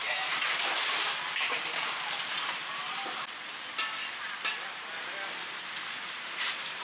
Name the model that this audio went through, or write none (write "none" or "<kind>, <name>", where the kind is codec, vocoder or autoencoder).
vocoder, BigVGAN v2